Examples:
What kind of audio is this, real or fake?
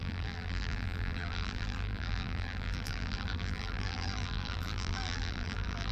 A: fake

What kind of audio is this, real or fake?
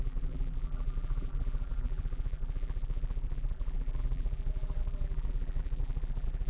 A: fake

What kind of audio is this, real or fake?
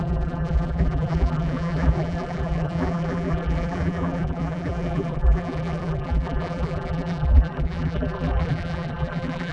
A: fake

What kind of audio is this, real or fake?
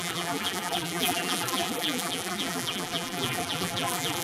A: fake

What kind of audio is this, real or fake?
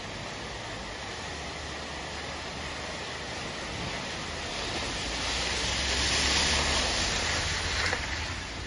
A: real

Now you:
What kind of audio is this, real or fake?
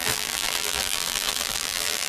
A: fake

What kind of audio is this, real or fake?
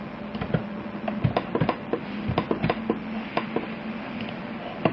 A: real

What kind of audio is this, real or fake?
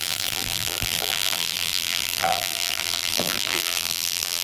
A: fake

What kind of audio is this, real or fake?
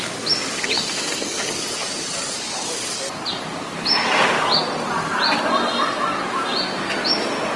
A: real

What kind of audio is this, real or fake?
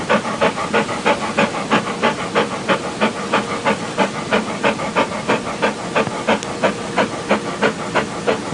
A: real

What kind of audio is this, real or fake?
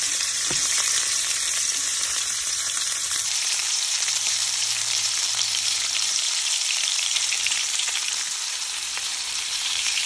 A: fake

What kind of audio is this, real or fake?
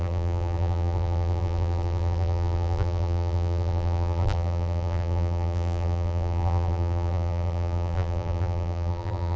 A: fake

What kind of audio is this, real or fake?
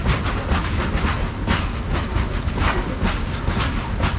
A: real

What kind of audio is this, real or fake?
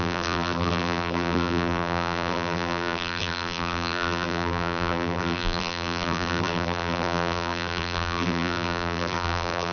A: fake